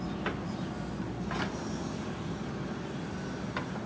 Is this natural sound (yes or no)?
yes